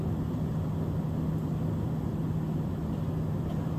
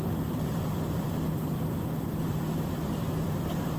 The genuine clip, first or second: first